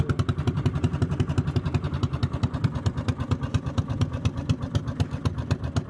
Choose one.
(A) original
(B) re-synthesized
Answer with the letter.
A